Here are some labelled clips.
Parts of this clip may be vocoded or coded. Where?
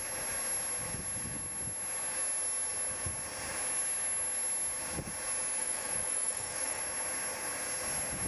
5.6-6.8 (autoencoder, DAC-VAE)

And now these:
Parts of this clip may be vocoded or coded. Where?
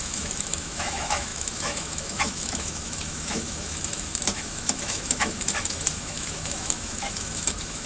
0.0-7.9 (autoencoder, DAC-VAE)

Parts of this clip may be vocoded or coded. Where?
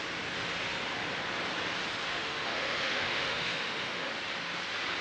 2.1-4.1 (autoencoder, DAC-VAE)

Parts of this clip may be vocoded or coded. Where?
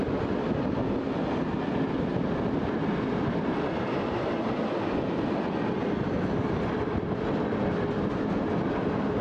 none